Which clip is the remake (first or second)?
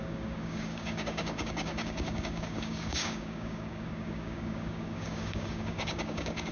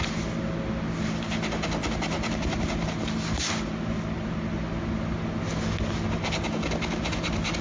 first